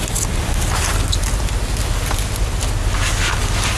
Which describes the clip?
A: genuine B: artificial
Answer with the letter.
A